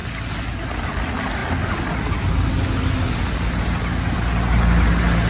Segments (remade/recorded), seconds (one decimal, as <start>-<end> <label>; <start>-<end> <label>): 0.0-5.3 recorded